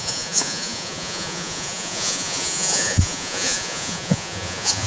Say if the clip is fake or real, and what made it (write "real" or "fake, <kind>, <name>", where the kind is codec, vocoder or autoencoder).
fake, vocoder, Vocos